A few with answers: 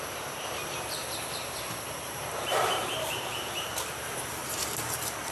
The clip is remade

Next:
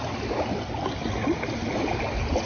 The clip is recorded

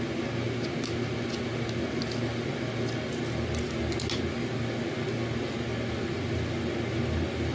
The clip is recorded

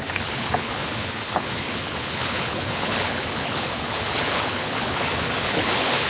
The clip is remade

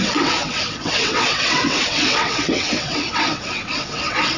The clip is remade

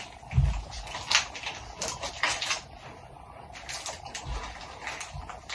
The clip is recorded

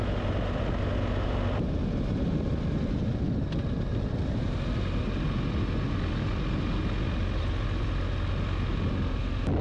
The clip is recorded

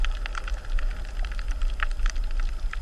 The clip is recorded